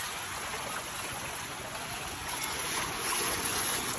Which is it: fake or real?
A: fake